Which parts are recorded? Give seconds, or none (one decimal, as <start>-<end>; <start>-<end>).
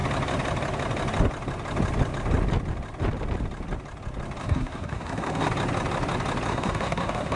0.0-4.4; 5.5-6.5